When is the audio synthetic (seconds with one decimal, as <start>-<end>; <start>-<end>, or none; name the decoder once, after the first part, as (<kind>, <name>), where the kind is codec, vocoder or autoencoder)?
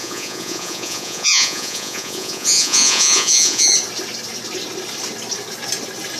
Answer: 0.0-3.7 (vocoder, Vocos)